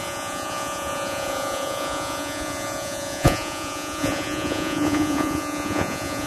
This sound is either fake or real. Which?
fake